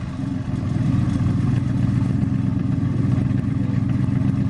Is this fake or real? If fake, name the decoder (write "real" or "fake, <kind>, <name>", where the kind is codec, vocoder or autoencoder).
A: fake, vocoder, BigVGAN v2